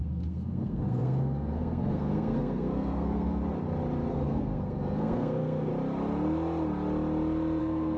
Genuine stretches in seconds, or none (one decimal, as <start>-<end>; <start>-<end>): 3.4-4.1; 5.7-7.6